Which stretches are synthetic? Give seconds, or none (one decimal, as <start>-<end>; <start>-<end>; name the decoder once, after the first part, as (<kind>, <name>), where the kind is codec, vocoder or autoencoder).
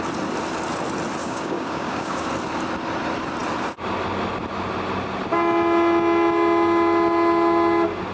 1.2-2.3 (codec, DAC)